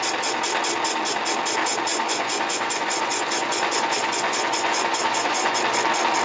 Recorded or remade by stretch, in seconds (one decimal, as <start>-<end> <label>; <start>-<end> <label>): 0.0-1.9 recorded; 1.9-5.6 remade; 5.6-6.2 recorded

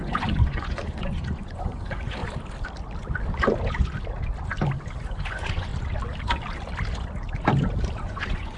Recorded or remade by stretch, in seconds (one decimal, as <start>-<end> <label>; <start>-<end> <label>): 0.0-2.2 remade; 2.2-5.0 recorded; 5.0-5.7 remade; 5.7-8.0 recorded; 8.0-8.6 remade

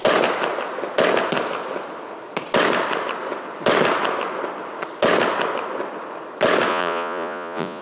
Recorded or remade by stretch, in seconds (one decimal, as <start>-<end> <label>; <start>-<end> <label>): 0.0-6.7 recorded; 6.7-7.8 remade

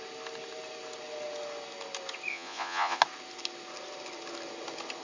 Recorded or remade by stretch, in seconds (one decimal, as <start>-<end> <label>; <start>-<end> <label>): 0.0-2.3 recorded; 2.3-3.0 remade; 3.0-5.0 recorded

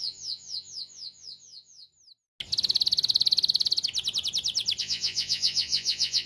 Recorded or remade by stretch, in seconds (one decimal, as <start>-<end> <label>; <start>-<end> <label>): 0.0-1.9 remade; 1.9-4.8 recorded; 4.8-6.3 remade

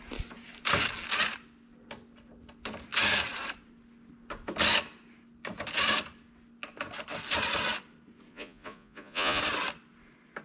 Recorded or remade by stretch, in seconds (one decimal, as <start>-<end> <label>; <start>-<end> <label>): 0.0-8.3 recorded; 8.3-9.4 remade; 9.4-10.4 recorded

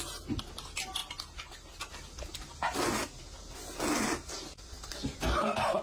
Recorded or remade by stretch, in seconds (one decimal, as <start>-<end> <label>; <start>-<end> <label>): 0.0-5.8 recorded

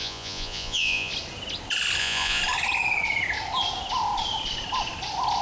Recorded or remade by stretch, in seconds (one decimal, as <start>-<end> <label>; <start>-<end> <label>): 0.0-1.1 remade; 1.1-2.0 recorded; 2.0-2.4 remade; 2.4-5.4 recorded